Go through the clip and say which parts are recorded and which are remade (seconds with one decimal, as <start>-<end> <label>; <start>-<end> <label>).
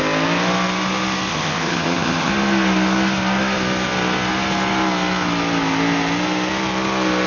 0.0-1.3 recorded; 1.3-2.3 remade; 2.3-7.3 recorded